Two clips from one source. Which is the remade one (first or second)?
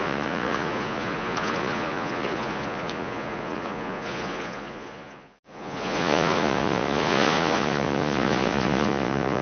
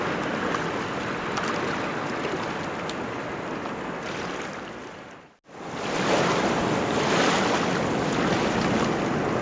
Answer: first